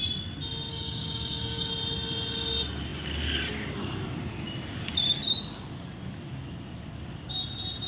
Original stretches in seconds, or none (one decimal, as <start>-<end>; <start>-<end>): 0.0-0.7; 1.7-7.9